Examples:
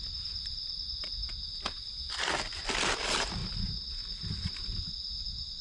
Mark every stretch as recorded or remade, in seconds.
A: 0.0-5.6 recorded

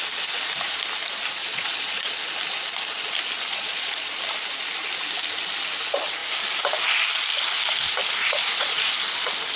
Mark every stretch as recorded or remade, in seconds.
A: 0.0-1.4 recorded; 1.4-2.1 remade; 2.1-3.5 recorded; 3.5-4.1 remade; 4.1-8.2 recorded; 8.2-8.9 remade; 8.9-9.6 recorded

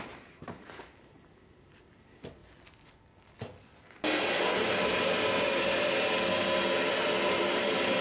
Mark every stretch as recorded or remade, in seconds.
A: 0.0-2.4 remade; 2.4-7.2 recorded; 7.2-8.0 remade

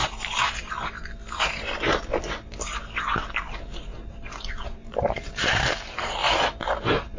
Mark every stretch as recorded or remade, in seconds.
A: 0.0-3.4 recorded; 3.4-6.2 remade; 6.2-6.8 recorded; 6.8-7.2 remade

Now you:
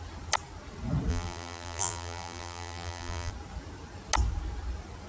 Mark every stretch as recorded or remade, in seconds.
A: 0.0-1.1 recorded; 1.1-3.3 remade; 3.3-5.1 recorded

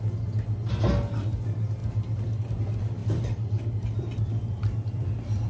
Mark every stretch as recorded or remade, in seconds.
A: 0.0-3.0 recorded; 3.0-5.5 remade

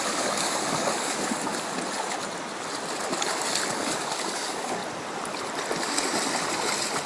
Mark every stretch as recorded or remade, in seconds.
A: 0.0-1.5 remade; 1.5-3.7 recorded; 3.7-4.8 remade; 4.8-7.1 recorded

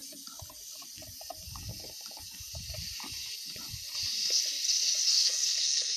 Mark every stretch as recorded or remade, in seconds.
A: 0.0-5.1 recorded; 5.1-6.0 remade